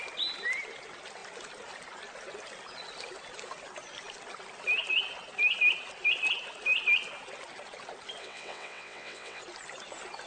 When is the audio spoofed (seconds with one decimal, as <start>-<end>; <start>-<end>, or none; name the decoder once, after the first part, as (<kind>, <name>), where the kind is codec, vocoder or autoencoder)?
8.2-9.4 (vocoder, WaveNeXt)